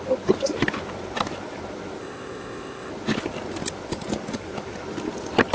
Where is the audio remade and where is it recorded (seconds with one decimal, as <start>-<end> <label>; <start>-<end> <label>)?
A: 0.0-2.0 recorded; 2.0-2.9 remade; 2.9-5.5 recorded